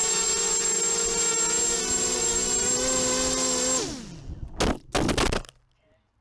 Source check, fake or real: real